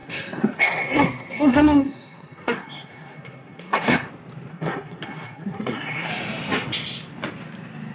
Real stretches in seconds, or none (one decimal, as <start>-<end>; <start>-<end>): 4.1-4.5; 6.1-7.9